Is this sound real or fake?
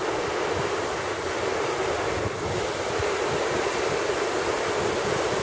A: real